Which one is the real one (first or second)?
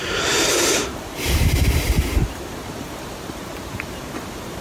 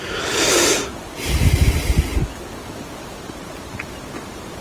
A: second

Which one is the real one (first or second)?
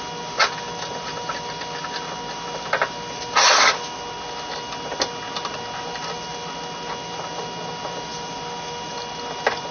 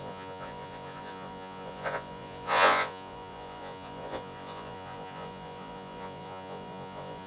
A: first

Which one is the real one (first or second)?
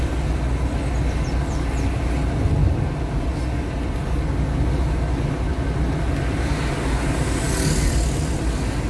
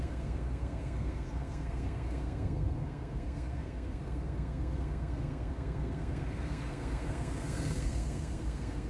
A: first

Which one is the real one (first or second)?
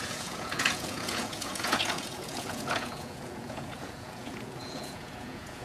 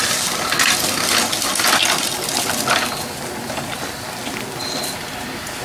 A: second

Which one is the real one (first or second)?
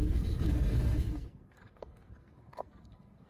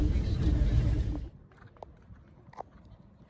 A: second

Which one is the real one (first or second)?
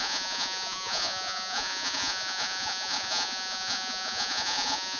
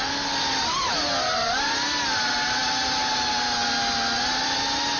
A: second